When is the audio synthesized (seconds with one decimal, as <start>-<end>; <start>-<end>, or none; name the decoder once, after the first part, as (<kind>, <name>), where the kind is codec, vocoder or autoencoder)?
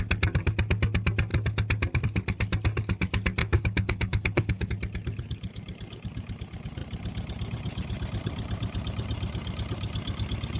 3.4-4.7 (codec, HILCodec)